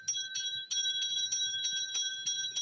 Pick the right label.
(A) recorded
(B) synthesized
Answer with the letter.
A